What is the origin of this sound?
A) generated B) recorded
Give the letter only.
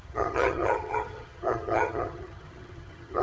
A